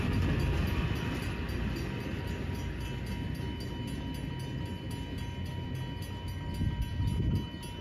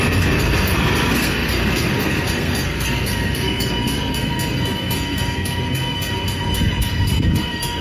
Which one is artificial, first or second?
second